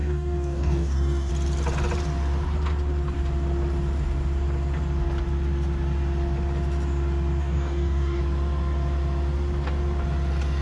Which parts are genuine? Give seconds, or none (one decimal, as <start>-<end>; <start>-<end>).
1.3-7.4; 8.2-10.6